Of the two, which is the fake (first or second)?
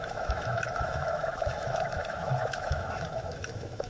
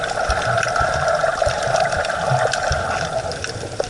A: first